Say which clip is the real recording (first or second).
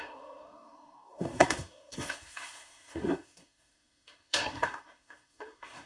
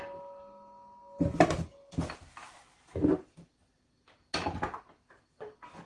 second